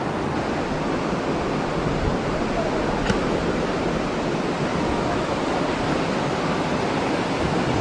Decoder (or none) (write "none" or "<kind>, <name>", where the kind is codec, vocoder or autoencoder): none